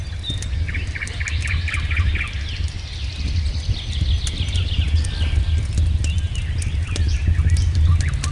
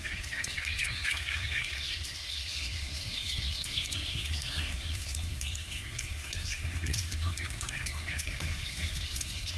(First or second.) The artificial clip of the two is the second